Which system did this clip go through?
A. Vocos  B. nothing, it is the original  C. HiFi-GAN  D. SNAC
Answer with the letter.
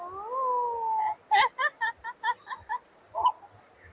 B